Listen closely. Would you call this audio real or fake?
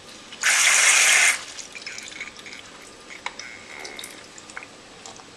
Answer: fake